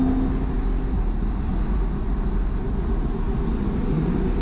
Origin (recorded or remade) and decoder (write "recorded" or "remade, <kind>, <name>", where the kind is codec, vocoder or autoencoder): recorded